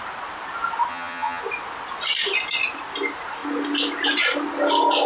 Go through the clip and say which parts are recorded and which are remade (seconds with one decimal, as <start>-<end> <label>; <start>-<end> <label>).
0.0-0.9 recorded; 0.9-1.4 remade; 1.4-5.1 recorded